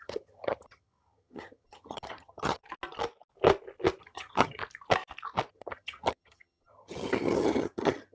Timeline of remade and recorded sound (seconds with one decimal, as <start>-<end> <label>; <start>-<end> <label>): 0.0-2.6 remade; 2.6-4.0 recorded; 4.0-4.6 remade; 4.6-5.5 recorded; 5.5-8.1 remade